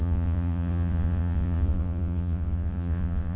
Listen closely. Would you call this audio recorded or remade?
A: remade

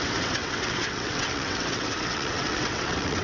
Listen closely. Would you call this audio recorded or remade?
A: remade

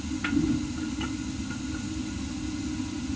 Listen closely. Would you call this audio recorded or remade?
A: recorded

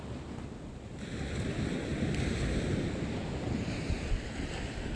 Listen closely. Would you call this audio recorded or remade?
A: recorded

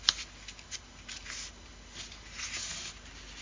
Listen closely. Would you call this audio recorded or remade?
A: recorded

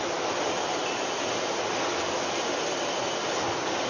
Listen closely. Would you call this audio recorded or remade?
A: recorded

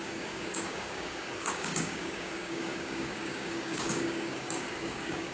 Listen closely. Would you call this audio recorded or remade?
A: remade